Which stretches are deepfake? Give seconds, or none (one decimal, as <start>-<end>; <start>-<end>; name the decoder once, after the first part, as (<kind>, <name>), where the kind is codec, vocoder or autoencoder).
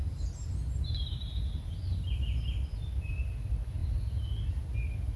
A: none